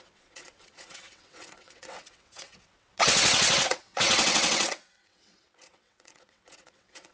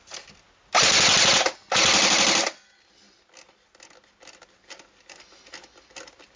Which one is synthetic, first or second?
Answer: first